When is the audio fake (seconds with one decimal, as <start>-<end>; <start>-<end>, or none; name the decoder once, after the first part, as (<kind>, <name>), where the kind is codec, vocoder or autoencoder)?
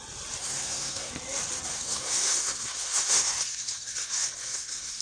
0.4-1.1 (codec, SNAC); 1.7-5.0